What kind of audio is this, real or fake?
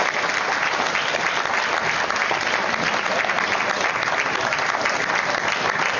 real